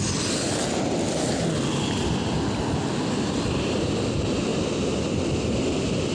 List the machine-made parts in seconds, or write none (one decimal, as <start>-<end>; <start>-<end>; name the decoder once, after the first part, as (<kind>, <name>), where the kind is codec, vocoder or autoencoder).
none